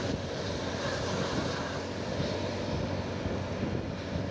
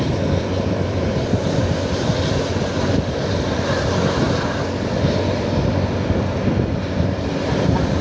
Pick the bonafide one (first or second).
first